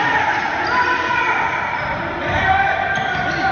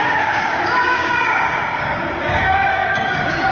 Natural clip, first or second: first